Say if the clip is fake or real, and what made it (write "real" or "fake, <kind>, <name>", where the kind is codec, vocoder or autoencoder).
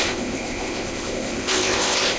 fake, codec, ZipCodec